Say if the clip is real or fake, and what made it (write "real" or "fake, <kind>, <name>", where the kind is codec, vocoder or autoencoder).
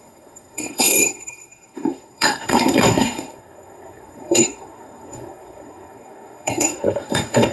fake, codec, SNAC